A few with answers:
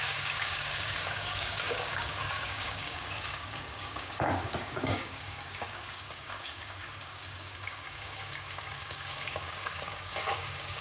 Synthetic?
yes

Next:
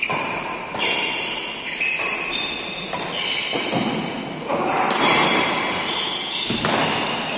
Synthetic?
no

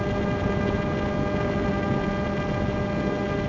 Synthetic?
no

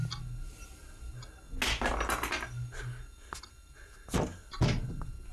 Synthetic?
no